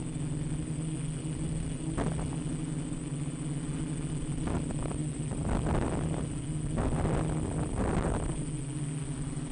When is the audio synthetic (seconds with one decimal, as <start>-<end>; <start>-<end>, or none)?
none